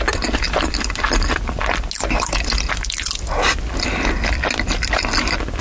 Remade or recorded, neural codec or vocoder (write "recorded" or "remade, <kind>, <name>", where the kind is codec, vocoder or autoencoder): recorded